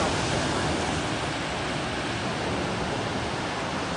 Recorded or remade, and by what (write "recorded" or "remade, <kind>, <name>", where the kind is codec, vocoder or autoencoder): recorded